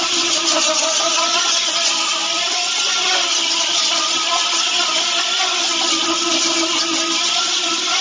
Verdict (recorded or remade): recorded